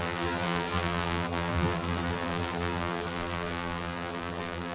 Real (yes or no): no